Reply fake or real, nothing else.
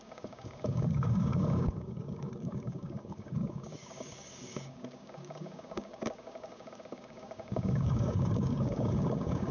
fake